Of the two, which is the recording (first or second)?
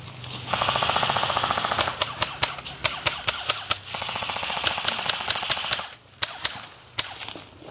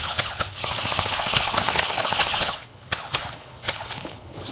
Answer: first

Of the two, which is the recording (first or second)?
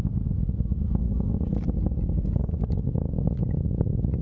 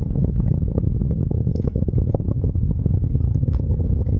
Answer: first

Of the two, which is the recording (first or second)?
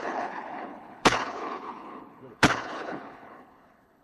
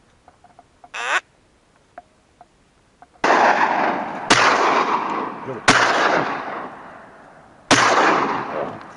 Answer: second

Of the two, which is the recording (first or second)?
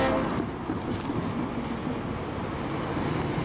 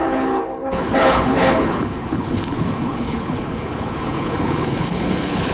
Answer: first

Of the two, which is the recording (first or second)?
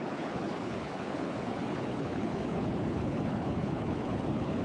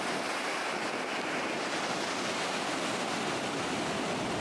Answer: second